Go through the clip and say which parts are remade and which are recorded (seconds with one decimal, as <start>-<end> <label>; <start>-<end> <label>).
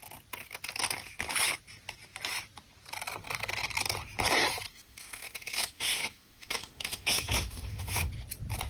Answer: 0.0-4.7 recorded; 4.7-8.1 remade; 8.1-8.7 recorded